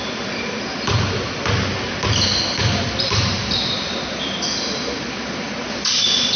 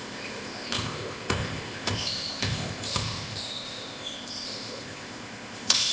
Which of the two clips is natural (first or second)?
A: first